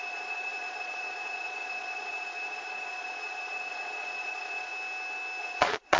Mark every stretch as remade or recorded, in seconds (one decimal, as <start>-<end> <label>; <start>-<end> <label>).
0.0-4.7 remade; 4.7-5.4 recorded; 5.4-6.0 remade